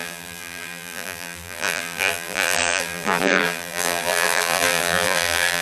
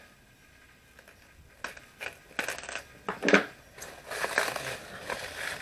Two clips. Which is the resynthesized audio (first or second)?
first